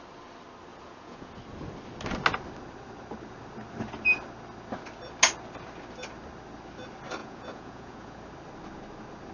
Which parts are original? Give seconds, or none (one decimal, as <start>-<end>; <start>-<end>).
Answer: 0.0-0.7; 1.3-7.2; 8.2-9.3